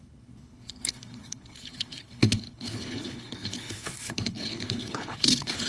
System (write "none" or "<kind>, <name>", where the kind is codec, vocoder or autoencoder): codec, HILCodec